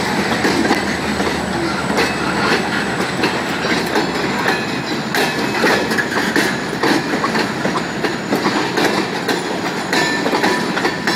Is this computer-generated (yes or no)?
no